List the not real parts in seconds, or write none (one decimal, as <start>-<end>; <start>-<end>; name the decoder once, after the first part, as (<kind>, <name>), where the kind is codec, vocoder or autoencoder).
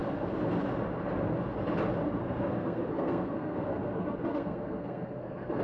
2.2-5.6 (codec, SNAC)